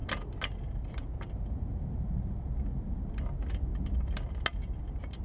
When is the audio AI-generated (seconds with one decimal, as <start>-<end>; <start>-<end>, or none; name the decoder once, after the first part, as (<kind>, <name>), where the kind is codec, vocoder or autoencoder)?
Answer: none